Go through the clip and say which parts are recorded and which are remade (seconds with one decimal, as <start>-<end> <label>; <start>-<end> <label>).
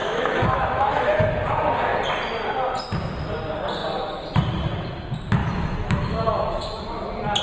0.0-1.4 remade; 1.4-5.4 recorded; 5.4-6.8 remade; 6.8-7.4 recorded